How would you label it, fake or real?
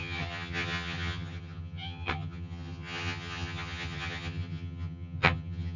fake